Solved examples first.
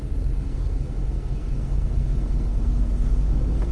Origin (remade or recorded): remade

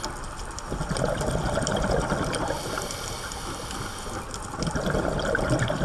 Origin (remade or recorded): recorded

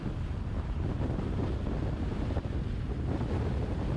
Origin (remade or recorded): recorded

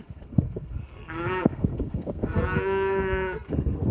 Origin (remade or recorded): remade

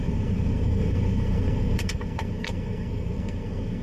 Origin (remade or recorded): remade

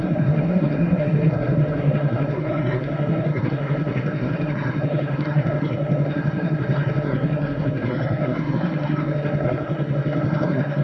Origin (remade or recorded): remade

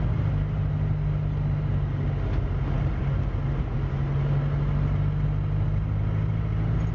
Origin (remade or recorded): recorded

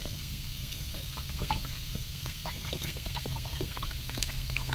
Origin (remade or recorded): remade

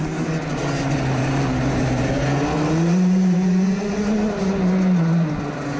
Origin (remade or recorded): recorded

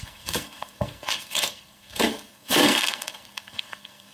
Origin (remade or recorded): remade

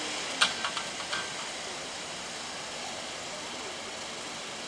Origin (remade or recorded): recorded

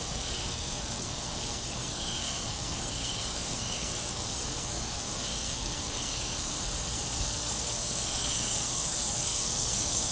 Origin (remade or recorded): remade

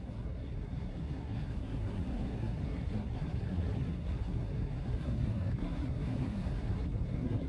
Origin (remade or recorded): remade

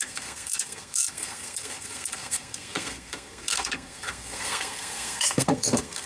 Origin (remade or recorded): remade